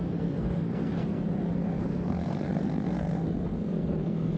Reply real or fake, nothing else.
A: fake